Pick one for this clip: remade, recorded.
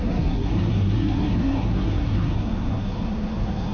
remade